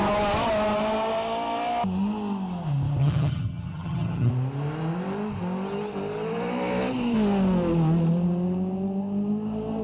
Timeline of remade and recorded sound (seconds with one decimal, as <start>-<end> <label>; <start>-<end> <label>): 0.0-3.0 recorded; 3.0-4.3 remade; 4.3-9.8 recorded